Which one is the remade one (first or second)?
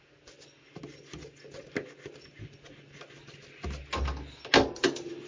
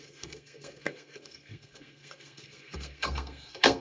second